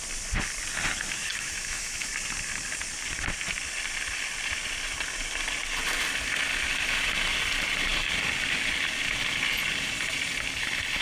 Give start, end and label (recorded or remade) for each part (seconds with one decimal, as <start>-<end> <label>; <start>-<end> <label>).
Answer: 0.0-1.3 recorded; 1.3-2.1 remade; 2.1-11.0 recorded